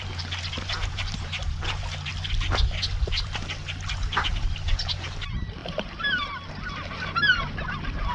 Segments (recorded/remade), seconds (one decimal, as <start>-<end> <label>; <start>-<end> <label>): 0.0-2.1 remade; 2.1-3.0 recorded; 3.0-8.1 remade

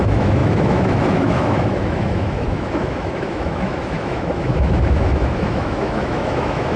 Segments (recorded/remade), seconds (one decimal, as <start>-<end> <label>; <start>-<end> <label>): 0.0-6.8 remade

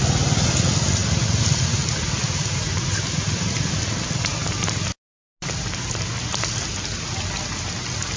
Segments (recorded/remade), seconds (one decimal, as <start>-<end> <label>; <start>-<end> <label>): 0.0-8.2 recorded

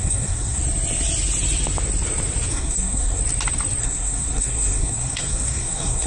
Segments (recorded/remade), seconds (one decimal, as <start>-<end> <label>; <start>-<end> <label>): 0.0-0.6 remade; 0.6-2.5 recorded; 2.5-3.2 remade; 3.2-3.8 recorded; 3.8-6.1 remade

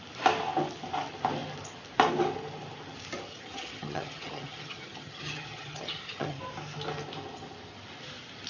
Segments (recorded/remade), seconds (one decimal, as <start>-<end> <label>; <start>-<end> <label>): 0.0-3.3 recorded; 3.3-6.4 remade; 6.4-8.5 recorded

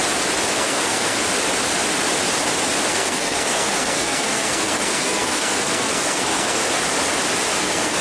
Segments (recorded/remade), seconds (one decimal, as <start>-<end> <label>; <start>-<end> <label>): 0.0-0.5 recorded; 0.5-1.2 remade; 1.2-2.9 recorded; 2.9-6.6 remade; 6.6-7.6 recorded; 7.6-8.0 remade